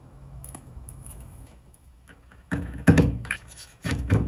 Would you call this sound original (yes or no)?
no